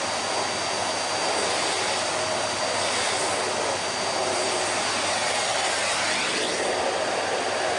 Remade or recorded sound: recorded